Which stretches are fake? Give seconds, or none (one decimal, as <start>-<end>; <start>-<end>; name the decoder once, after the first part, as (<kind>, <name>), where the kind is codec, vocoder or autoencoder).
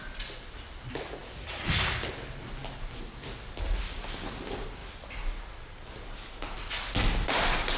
none